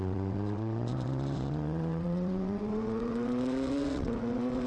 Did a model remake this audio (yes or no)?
yes